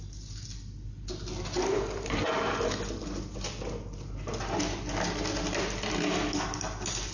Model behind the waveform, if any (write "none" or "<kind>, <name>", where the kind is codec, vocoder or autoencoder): none